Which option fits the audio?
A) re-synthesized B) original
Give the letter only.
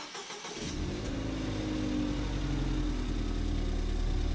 B